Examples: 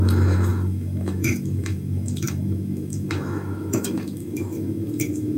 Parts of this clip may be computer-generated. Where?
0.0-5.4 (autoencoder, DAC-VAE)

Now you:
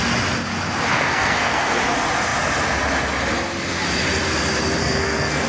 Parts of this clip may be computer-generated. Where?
0.9-1.8 (codec, SNAC); 4.8-5.5

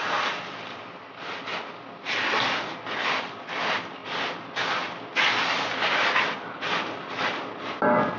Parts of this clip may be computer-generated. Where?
none

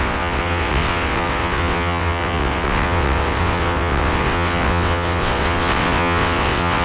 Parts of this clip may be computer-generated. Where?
0.0-6.8 (vocoder, WaveNeXt)

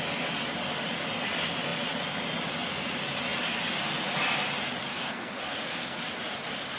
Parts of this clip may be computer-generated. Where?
4.9-6.0 (codec, SNAC)